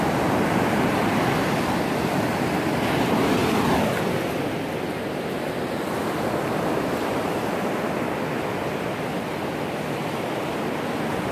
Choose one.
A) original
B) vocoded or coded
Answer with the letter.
A